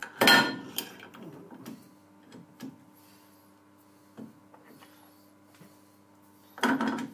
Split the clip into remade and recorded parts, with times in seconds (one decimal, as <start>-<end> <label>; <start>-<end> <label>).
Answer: 0.0-7.1 recorded